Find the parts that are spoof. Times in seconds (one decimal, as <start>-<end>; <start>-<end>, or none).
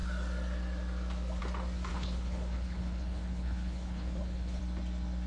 1.9-4.6